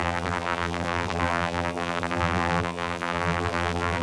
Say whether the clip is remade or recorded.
remade